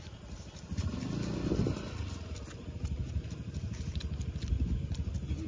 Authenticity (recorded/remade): recorded